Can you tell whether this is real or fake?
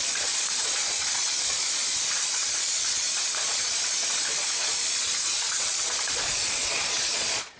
fake